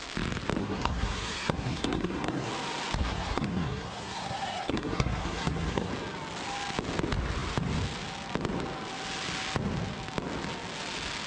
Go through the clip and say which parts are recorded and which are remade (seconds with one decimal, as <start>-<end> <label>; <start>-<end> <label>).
0.0-0.6 recorded; 0.6-2.5 remade; 2.5-3.0 recorded; 3.0-5.9 remade; 5.9-11.3 recorded